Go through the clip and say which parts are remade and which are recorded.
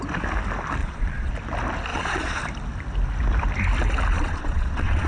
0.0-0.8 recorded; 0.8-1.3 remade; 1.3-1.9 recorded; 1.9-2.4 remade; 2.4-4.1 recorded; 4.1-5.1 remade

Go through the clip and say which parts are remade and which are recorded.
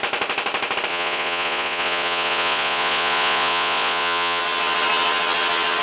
0.0-0.9 recorded; 0.9-4.4 remade; 4.4-5.8 recorded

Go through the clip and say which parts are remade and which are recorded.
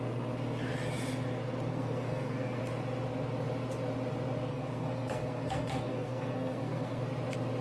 0.0-1.7 recorded; 1.7-2.6 remade; 2.6-4.5 recorded; 4.5-7.0 remade; 7.0-7.6 recorded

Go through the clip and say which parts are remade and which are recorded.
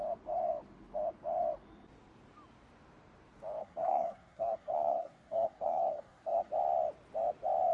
0.0-3.6 recorded; 3.6-6.5 remade; 6.5-7.7 recorded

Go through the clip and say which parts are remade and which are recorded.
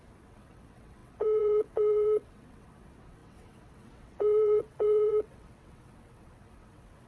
0.0-7.1 remade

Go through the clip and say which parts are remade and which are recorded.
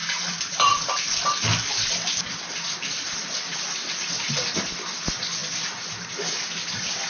0.0-7.1 recorded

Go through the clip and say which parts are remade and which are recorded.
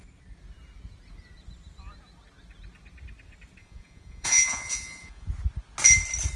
0.0-3.6 recorded; 3.6-5.3 remade; 5.3-6.4 recorded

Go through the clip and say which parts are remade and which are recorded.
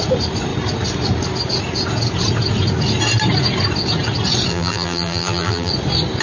0.0-4.5 recorded; 4.5-5.7 remade; 5.7-6.2 recorded